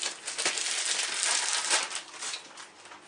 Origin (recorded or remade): recorded